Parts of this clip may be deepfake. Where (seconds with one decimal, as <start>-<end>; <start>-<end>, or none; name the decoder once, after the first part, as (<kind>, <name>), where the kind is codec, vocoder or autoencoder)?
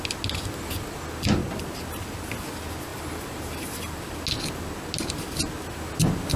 2.9-4.0 (vocoder, BigVGAN v2)